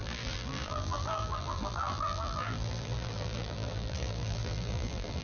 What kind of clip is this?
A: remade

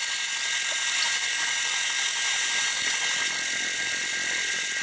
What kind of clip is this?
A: recorded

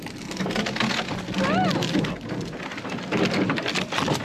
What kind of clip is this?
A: recorded